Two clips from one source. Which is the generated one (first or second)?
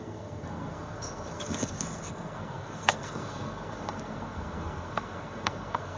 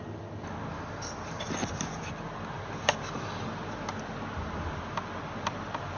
first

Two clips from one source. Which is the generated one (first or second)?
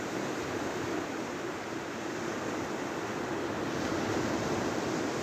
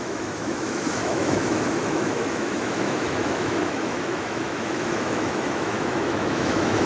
second